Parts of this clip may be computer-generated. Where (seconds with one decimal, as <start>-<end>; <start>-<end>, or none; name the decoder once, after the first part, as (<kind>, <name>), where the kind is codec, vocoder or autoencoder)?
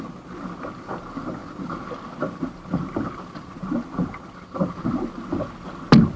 none